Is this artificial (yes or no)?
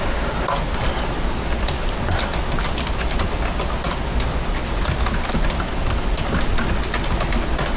no